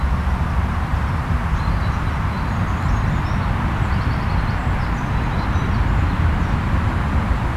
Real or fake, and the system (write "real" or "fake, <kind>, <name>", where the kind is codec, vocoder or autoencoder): real